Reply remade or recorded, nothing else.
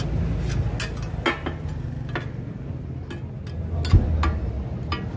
recorded